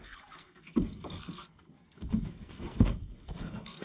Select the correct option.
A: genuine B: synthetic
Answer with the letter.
B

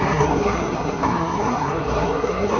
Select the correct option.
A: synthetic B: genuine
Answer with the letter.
A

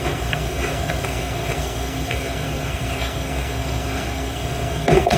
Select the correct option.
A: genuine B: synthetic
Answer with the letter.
B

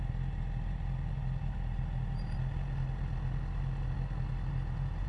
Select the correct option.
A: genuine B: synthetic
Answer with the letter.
A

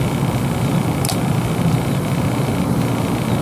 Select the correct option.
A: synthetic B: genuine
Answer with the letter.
B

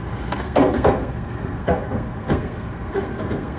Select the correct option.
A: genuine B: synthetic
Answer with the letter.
B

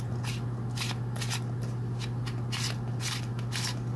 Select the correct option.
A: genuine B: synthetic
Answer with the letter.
A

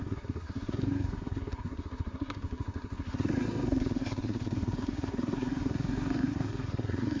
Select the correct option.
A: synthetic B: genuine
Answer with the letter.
A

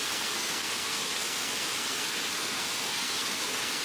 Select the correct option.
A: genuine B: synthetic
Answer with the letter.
B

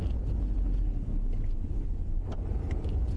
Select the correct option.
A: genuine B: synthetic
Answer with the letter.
A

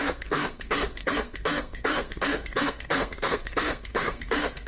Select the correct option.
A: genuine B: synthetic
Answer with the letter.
B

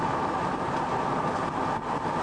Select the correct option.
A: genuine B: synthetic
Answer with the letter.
A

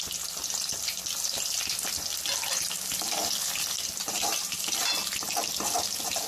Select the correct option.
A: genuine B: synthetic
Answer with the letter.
A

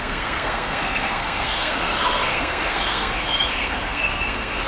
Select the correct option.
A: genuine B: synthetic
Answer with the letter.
B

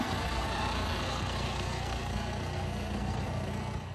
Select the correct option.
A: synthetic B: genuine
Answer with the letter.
A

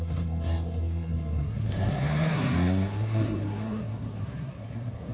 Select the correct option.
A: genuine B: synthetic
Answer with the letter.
B